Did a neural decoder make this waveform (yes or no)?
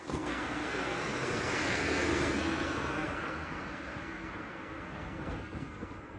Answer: yes